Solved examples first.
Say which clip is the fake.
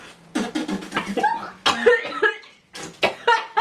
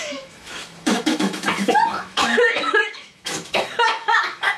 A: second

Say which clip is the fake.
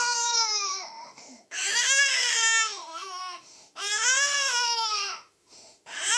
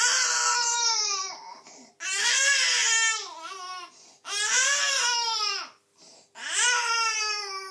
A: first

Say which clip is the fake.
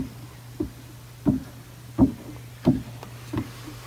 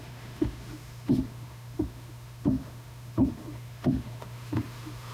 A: second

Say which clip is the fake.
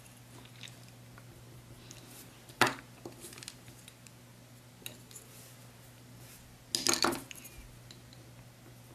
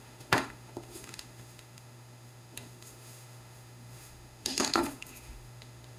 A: second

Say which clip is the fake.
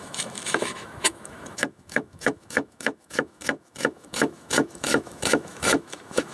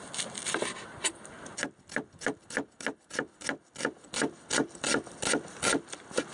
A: first